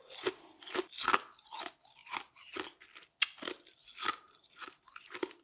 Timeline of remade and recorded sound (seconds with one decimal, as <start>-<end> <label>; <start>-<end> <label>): 0.0-5.4 recorded